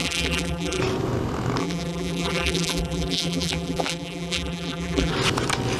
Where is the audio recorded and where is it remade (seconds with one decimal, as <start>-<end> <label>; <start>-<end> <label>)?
0.0-0.8 remade; 0.8-1.6 recorded; 1.6-5.1 remade; 5.1-5.8 recorded